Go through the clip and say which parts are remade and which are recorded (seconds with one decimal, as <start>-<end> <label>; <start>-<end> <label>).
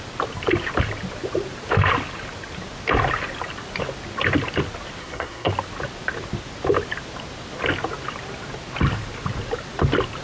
0.0-5.0 recorded; 5.0-5.5 remade; 5.5-10.2 recorded